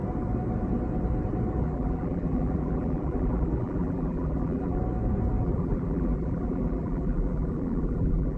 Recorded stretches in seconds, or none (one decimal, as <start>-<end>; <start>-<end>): 0.0-1.6; 4.8-5.4